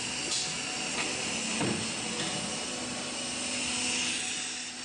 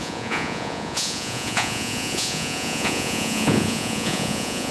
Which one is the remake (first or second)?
second